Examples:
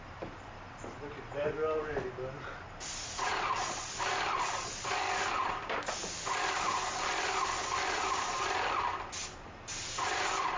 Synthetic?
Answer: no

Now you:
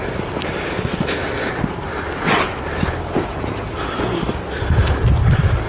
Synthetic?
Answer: no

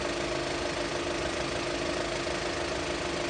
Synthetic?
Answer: no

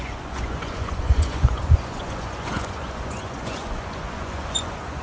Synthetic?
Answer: yes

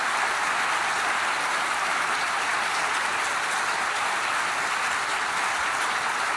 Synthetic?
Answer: no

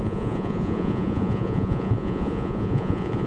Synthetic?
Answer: yes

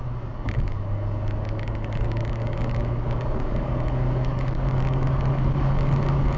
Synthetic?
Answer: yes